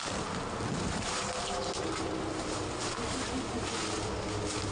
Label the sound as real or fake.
real